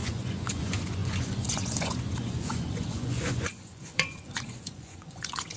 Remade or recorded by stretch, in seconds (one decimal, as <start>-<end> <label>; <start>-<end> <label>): 0.0-5.6 remade